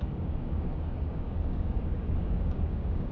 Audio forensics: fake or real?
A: fake